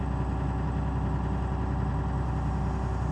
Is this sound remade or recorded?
recorded